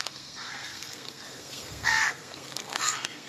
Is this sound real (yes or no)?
no